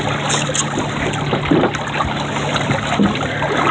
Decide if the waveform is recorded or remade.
recorded